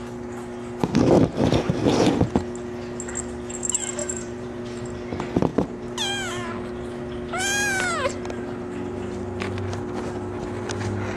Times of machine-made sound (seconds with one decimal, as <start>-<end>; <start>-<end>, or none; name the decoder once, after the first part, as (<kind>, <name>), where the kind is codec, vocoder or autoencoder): 4.0-4.6 (vocoder, BigVGAN v2)